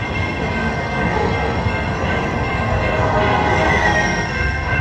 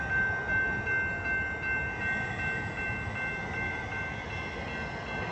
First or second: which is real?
second